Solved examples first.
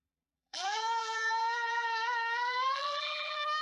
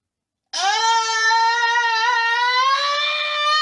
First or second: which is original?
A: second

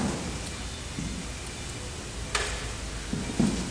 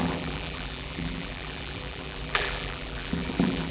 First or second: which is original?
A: first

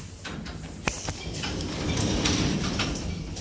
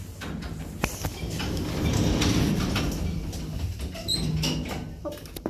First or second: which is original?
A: second